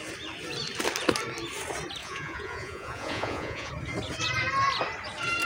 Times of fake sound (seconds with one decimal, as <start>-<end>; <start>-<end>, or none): 2.0-3.7